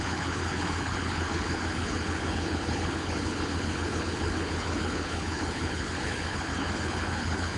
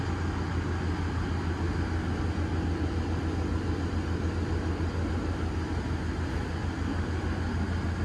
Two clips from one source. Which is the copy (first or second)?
first